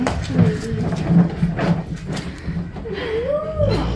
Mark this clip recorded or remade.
recorded